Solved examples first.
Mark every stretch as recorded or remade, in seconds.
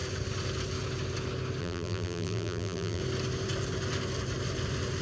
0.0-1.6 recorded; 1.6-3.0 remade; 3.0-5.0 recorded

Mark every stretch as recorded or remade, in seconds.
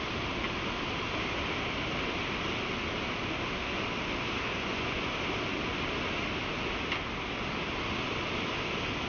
0.0-4.5 recorded; 4.5-5.1 remade; 5.1-9.1 recorded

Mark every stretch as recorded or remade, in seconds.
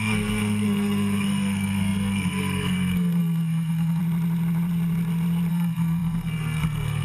0.0-4.0 remade; 4.0-5.5 recorded; 5.5-7.0 remade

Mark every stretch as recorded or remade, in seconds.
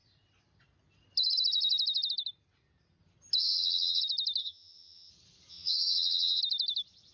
0.0-3.4 recorded; 3.4-4.0 remade; 4.0-4.4 recorded; 4.4-5.1 remade; 5.1-5.5 recorded; 5.5-6.4 remade; 6.4-7.1 recorded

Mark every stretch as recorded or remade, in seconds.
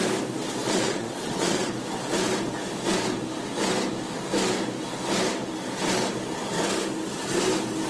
0.0-0.6 recorded; 0.6-1.7 remade; 1.7-7.9 recorded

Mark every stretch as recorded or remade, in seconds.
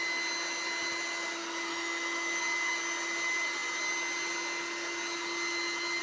0.0-1.7 recorded; 1.7-2.4 remade; 2.4-6.0 recorded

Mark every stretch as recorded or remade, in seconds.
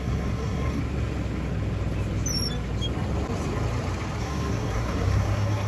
0.0-0.8 remade; 0.8-4.2 recorded; 4.2-5.7 remade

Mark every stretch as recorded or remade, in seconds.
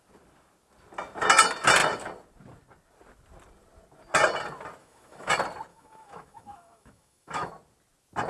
0.0-4.8 recorded; 4.8-5.3 remade; 5.3-5.7 recorded; 5.7-7.5 remade; 7.5-8.3 recorded